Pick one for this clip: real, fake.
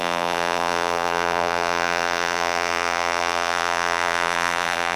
fake